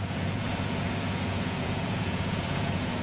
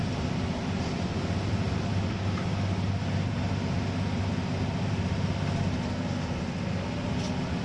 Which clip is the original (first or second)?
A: second